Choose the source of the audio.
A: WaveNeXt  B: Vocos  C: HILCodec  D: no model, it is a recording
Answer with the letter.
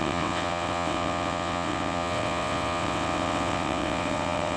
A